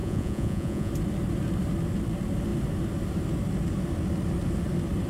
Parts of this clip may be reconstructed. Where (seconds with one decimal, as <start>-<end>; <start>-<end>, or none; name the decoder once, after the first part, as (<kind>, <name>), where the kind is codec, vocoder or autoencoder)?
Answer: 0.0-0.9 (vocoder, Vocos)